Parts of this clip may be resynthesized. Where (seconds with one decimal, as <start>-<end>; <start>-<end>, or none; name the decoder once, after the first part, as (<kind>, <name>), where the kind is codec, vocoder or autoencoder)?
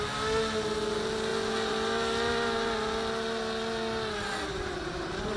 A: none